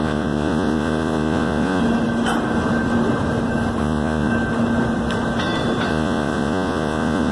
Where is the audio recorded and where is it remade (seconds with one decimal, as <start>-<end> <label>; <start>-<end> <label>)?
0.0-1.8 remade; 1.8-3.8 recorded; 3.8-4.3 remade; 4.3-5.9 recorded; 5.9-7.3 remade